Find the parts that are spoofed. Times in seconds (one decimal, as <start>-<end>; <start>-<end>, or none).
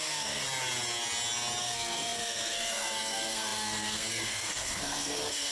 0.0-0.4; 1.6-5.5